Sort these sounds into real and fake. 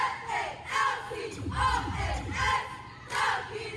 real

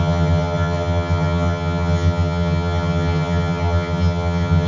fake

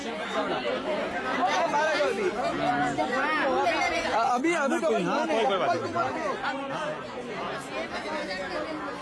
real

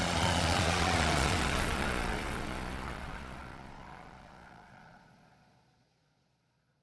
fake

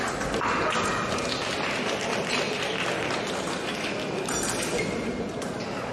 real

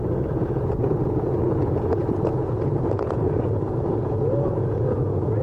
fake